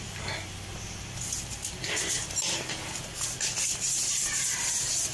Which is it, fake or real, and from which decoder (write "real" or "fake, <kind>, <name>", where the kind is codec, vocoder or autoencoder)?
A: real